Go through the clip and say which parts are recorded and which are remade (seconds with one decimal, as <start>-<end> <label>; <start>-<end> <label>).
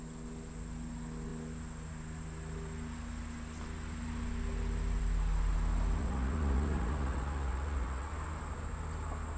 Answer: 0.0-6.0 recorded; 6.0-8.1 remade; 8.1-9.4 recorded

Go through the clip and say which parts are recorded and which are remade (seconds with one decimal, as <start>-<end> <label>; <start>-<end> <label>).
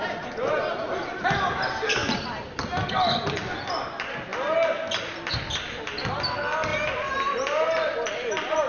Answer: 0.0-8.7 recorded